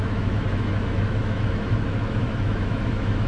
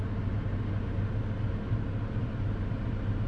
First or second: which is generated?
first